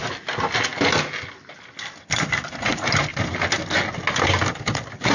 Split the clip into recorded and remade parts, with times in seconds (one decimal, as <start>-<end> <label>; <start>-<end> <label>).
0.0-5.1 recorded